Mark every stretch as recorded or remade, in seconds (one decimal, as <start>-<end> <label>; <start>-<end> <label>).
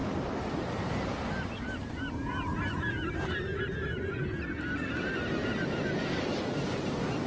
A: 0.0-7.3 recorded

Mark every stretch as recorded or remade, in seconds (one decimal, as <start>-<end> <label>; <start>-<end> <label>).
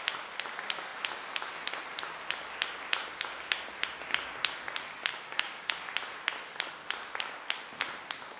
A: 0.0-5.1 recorded; 5.1-5.7 remade; 5.7-8.4 recorded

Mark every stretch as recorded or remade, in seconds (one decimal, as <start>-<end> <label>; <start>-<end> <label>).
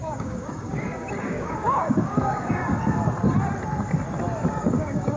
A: 0.0-2.6 remade; 2.6-4.5 recorded; 4.5-5.2 remade